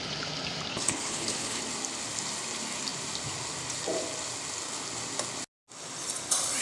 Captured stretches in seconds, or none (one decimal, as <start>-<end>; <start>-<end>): 0.0-0.7; 1.6-6.6